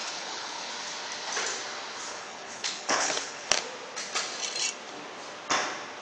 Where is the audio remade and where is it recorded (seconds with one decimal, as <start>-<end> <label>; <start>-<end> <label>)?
0.0-0.7 remade; 0.7-2.1 recorded; 2.1-3.5 remade; 3.5-6.0 recorded